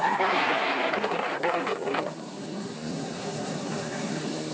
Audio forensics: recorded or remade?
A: remade